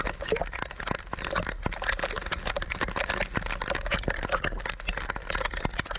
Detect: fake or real real